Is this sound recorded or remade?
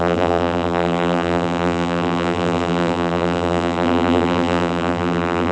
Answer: remade